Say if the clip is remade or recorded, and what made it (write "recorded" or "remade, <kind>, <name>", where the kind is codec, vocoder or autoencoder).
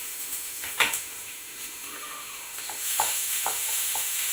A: remade, autoencoder, DAC-VAE